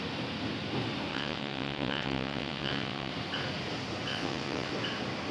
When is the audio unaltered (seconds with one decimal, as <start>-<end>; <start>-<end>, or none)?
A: 0.0-1.1; 3.1-4.1; 4.7-5.3